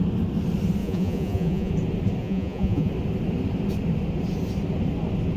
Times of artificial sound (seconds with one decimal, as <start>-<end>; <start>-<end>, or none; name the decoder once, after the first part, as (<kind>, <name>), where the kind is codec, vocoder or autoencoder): 0.8-1.7 (vocoder, Vocos); 2.2-2.9